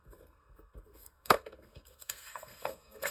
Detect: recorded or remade remade